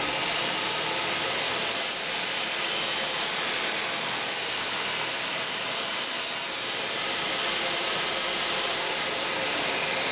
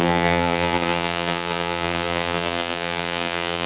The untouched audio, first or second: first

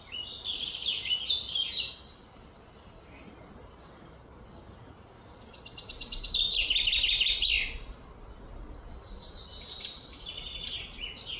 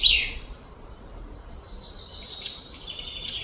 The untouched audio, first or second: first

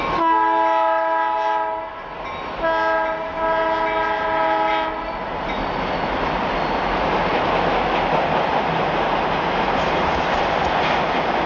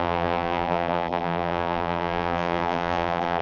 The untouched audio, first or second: first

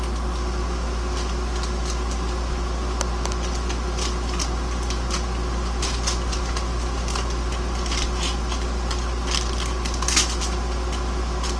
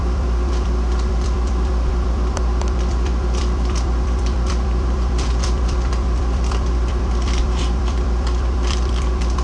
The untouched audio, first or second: first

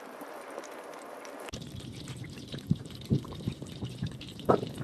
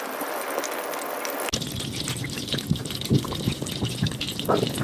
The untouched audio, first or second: second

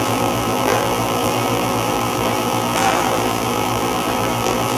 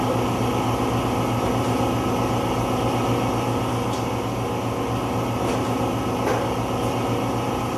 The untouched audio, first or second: second